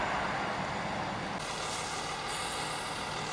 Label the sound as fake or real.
real